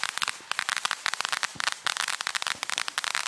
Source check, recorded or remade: recorded